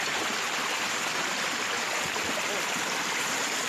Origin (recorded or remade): recorded